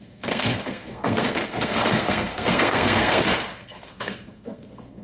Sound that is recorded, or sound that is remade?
remade